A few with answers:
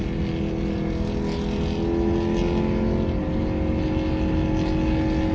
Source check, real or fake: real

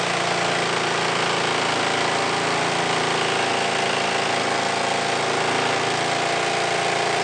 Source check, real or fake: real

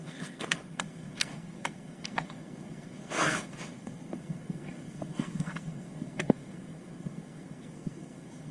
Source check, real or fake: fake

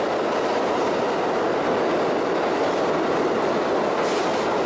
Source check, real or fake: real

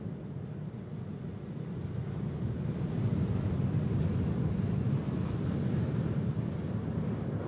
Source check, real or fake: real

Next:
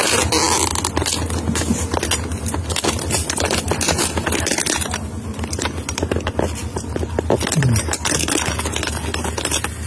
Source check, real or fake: real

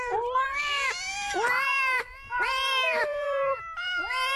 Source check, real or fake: fake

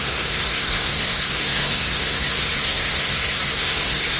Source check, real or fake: fake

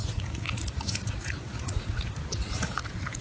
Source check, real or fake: fake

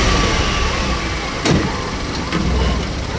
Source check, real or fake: real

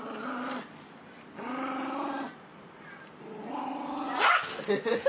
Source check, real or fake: real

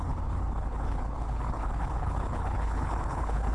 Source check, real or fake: fake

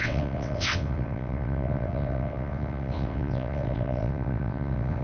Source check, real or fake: fake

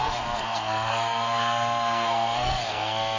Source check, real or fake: fake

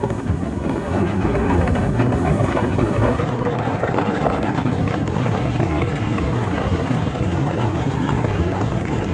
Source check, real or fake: fake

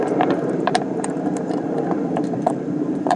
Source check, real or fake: fake